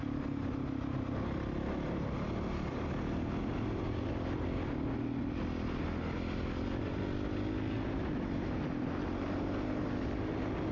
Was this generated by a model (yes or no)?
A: no